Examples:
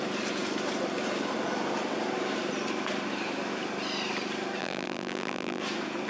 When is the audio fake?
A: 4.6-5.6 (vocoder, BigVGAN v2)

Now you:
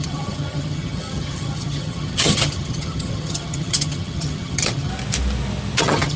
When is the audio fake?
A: 0.0-4.9 (vocoder, HiFi-GAN); 5.8-6.2

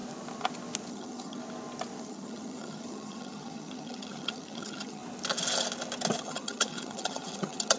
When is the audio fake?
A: 0.9-1.4 (vocoder, HiFi-GAN); 2.0-5.0; 6.2-7.8

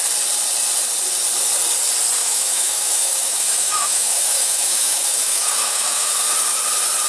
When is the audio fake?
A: 2.2-6.2 (autoencoder, DAC-VAE)

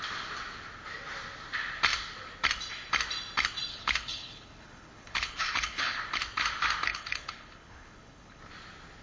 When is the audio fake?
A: 3.7-6.0 (codec, HILCodec); 6.9-8.4